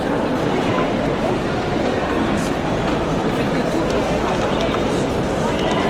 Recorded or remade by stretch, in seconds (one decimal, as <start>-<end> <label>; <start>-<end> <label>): 0.0-0.7 recorded; 0.7-3.4 remade; 3.4-5.9 recorded